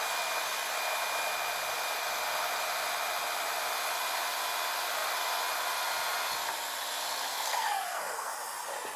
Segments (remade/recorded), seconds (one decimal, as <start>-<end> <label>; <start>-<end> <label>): 0.0-7.3 recorded; 7.3-8.3 remade; 8.3-9.0 recorded